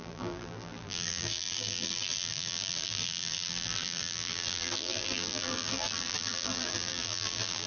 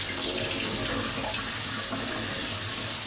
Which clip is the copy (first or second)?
first